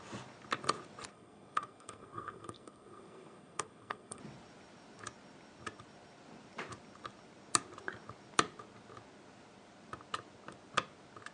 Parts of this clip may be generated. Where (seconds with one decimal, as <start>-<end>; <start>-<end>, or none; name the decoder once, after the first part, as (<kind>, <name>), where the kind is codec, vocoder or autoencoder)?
1.1-4.2 (codec, SNAC)